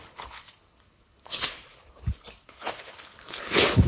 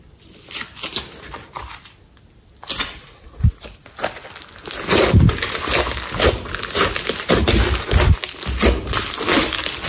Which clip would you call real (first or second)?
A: second